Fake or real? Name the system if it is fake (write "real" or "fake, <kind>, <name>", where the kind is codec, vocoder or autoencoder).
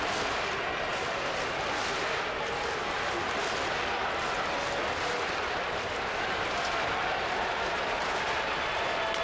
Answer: real